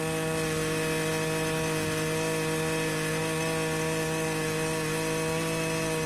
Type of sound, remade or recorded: recorded